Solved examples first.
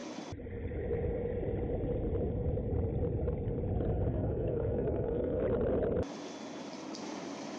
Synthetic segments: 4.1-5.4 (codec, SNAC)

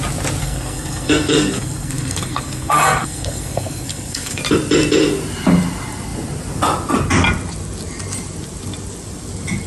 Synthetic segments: 0.4-4.4 (codec, SNAC)